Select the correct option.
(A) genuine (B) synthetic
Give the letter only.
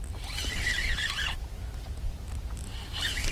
A